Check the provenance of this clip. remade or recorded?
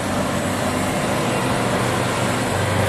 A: recorded